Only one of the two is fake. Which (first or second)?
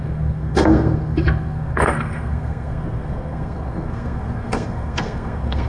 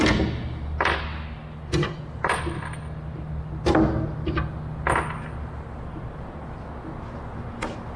first